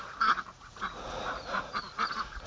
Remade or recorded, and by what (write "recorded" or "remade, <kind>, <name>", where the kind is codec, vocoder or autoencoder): remade, vocoder, Vocos